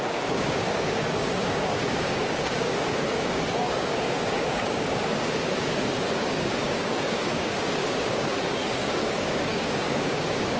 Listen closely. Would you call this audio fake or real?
fake